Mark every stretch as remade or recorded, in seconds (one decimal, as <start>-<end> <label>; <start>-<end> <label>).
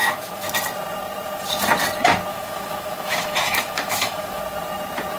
0.0-0.5 remade; 0.5-2.3 recorded; 2.3-4.4 remade; 4.4-5.2 recorded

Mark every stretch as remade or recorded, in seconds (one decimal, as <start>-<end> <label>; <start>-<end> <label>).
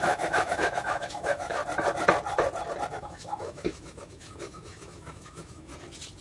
0.0-1.6 remade; 1.6-2.9 recorded; 2.9-5.7 remade; 5.7-6.2 recorded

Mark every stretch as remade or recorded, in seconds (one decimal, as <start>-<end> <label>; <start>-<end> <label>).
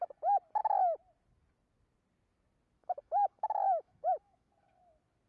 0.0-2.8 recorded; 2.8-4.5 remade; 4.5-5.3 recorded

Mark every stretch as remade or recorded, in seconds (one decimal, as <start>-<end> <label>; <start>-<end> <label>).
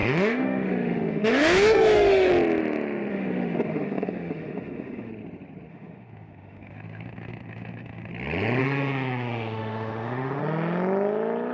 0.0-2.3 remade; 2.3-3.1 recorded; 3.1-5.1 remade; 5.1-5.7 recorded; 5.7-8.1 remade; 8.1-8.6 recorded; 8.6-10.4 remade; 10.4-11.5 recorded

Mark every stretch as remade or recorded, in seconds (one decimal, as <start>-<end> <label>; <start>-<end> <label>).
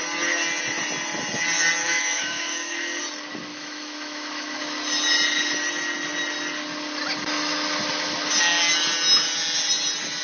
0.0-1.8 recorded; 1.8-3.0 remade; 3.0-3.5 recorded; 3.5-4.6 remade; 4.6-10.2 recorded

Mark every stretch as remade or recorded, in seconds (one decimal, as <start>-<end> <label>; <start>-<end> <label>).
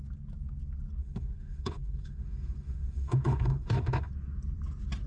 0.0-1.0 recorded; 1.0-4.1 remade; 4.1-5.1 recorded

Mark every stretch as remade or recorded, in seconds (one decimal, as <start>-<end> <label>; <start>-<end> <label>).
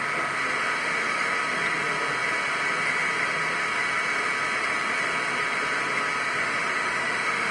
0.0-0.8 recorded; 0.8-1.3 remade; 1.3-6.4 recorded; 6.4-7.5 remade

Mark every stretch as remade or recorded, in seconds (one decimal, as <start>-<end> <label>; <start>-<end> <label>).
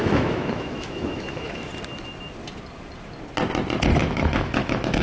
0.0-1.7 remade; 1.7-4.0 recorded; 4.0-5.0 remade